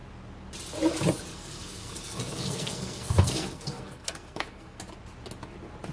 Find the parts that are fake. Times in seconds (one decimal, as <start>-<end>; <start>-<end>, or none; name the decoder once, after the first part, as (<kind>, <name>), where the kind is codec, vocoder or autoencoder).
1.3-4.8 (codec, SNAC)